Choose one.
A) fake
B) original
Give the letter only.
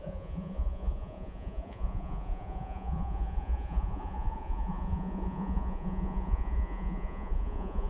A